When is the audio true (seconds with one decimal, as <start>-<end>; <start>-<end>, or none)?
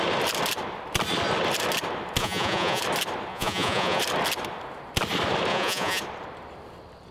0.0-2.2; 2.8-3.3; 4.0-5.5; 6.0-7.1